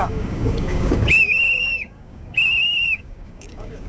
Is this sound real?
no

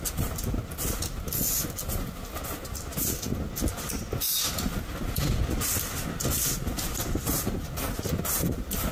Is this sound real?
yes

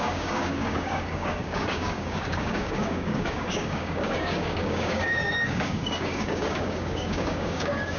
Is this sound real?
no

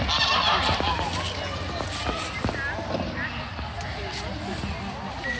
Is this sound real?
yes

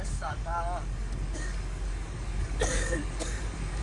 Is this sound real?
no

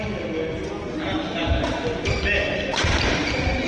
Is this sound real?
yes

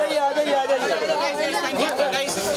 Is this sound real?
yes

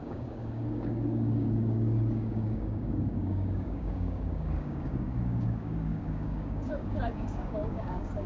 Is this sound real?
no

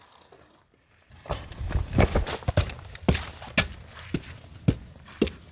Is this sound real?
yes